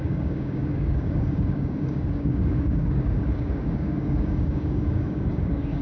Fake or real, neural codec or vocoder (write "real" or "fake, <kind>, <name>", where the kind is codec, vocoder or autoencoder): fake, codec, DAC